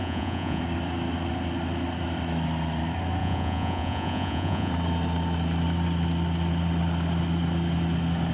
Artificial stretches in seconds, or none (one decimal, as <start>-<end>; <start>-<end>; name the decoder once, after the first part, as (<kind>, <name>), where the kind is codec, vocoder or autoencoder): 0.0-0.6 (vocoder, Vocos); 3.2-4.7